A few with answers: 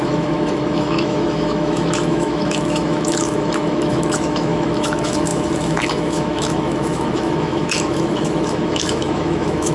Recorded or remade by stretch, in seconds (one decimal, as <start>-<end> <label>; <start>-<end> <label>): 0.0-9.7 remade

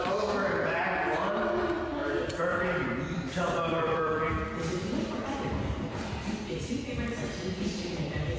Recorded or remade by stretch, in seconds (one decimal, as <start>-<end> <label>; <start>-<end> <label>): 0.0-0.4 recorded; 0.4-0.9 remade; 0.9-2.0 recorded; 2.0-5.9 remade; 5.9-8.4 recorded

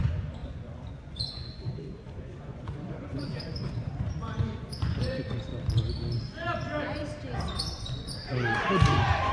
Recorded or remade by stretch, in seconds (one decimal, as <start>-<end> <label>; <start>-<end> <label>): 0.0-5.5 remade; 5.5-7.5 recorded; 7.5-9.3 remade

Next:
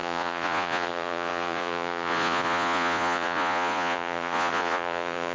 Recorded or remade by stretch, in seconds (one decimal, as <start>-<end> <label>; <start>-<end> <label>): 0.0-5.3 remade

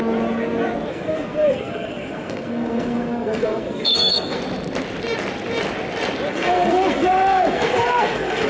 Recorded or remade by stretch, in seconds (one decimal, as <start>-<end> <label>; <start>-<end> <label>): 0.0-0.9 recorded; 0.9-4.4 remade; 4.4-6.3 recorded; 6.3-8.5 remade